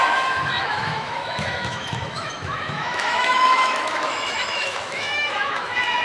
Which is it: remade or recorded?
remade